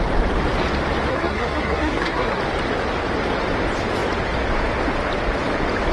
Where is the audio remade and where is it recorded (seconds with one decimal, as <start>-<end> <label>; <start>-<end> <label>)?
0.0-1.1 recorded; 1.1-2.4 remade; 2.4-5.9 recorded

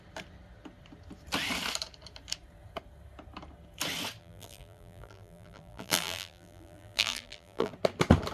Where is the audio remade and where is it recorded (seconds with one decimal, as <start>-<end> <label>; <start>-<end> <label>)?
0.0-4.2 recorded; 4.2-7.7 remade; 7.7-8.3 recorded